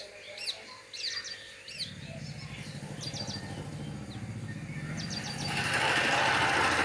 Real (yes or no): yes